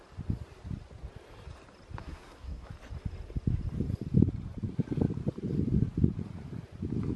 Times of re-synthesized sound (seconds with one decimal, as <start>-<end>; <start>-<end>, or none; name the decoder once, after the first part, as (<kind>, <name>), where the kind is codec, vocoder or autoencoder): 2.0-2.7 (codec, SNAC)